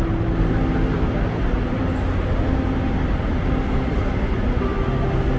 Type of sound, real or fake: real